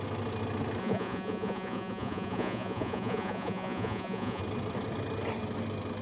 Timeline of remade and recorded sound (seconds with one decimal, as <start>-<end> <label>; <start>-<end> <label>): 0.0-0.8 recorded; 0.8-4.4 remade; 4.4-6.0 recorded